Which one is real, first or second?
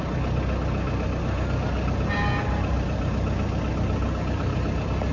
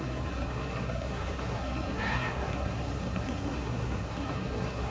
first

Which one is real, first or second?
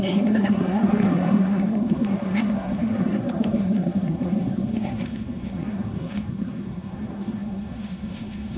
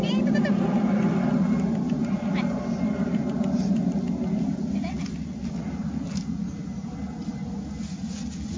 second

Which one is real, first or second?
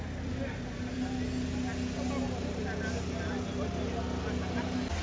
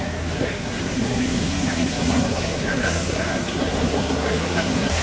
first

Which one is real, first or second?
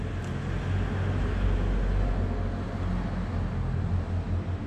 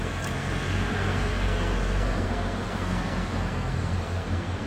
first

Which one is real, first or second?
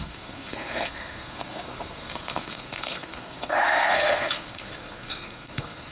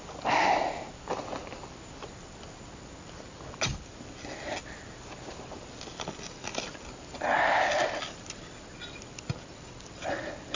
second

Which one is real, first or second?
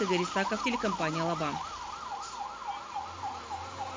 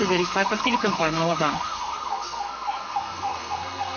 first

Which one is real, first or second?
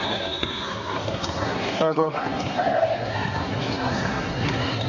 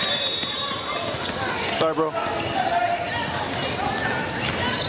second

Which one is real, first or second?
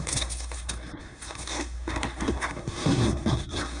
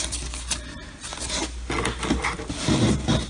second